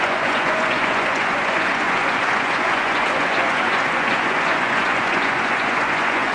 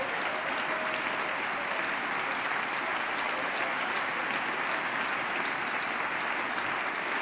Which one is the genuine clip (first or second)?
second